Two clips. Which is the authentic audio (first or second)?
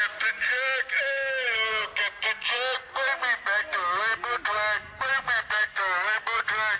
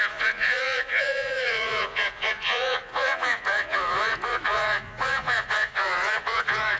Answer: first